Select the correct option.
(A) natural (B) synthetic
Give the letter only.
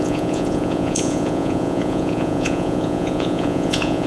B